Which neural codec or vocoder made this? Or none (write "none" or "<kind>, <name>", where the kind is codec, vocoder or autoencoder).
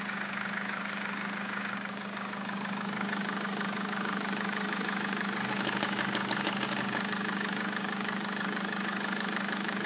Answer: codec, DAC